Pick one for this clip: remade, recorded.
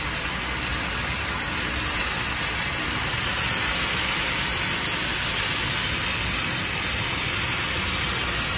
recorded